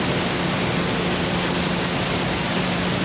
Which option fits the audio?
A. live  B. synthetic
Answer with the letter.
B